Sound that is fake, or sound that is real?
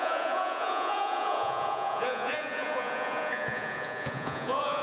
fake